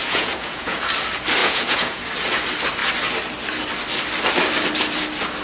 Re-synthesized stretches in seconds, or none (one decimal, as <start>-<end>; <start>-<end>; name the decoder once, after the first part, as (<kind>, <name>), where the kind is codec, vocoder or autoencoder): 0.0-0.9 (vocoder, Vocos); 1.4-2.0